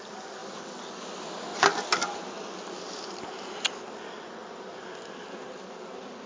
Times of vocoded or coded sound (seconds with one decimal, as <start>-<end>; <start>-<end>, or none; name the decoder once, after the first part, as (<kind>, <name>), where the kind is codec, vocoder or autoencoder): none

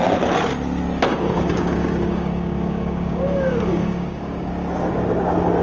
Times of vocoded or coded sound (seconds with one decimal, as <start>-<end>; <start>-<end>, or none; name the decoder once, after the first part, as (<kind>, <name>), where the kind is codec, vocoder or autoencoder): 1.1-4.5 (codec, DAC)